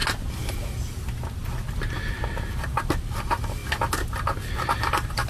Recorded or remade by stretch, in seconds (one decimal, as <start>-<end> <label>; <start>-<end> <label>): 0.0-3.2 recorded; 3.2-3.6 remade; 3.6-4.8 recorded; 4.8-5.3 remade